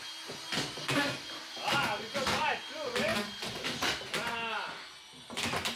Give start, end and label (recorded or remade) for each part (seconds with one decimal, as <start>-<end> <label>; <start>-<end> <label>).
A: 0.0-5.8 recorded